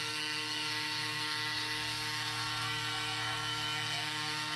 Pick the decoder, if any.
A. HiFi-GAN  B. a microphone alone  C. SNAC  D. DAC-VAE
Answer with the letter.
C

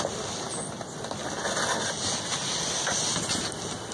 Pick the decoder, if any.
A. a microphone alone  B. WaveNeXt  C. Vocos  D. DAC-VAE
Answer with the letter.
A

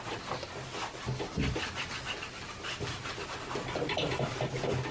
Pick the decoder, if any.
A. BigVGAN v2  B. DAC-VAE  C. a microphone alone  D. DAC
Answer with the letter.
C